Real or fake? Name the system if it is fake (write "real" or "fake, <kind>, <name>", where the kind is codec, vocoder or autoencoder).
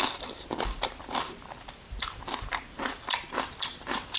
fake, vocoder, BigVGAN v2